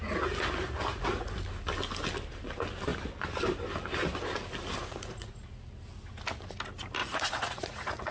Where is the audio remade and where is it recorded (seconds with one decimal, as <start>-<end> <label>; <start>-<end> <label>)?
0.0-0.9 recorded; 0.9-1.4 remade; 1.4-4.8 recorded; 4.8-5.4 remade; 5.4-7.0 recorded; 7.0-8.1 remade